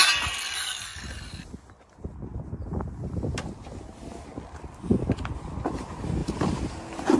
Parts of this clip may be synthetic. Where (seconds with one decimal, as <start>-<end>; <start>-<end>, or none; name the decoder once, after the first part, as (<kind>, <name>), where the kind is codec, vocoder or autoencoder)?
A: 6.2-6.7 (vocoder, BigVGAN v2)